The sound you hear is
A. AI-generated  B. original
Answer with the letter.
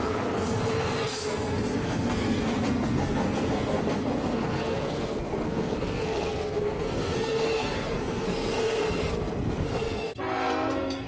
A